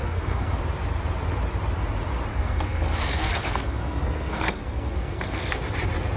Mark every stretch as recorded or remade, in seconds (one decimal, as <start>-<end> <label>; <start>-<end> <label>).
0.0-0.6 remade; 0.6-2.3 recorded; 2.3-5.6 remade; 5.6-6.2 recorded